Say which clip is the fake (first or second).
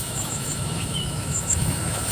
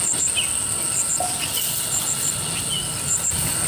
first